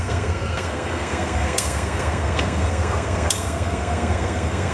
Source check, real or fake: fake